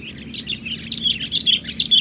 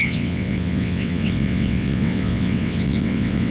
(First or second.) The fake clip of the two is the second